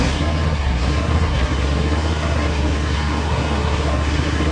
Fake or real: fake